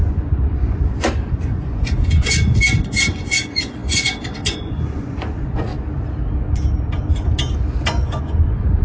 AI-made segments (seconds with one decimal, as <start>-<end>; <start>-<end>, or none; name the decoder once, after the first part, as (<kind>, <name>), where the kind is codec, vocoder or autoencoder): 0.0-5.7 (vocoder, Vocos); 8.2-8.8